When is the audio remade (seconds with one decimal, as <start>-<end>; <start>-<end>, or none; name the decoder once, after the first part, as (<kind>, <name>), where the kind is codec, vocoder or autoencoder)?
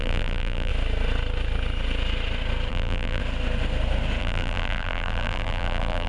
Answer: 0.0-0.7 (vocoder, BigVGAN v2); 2.7-3.2; 4.2-6.1